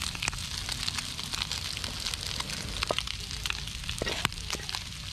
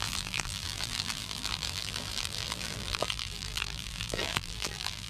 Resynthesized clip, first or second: second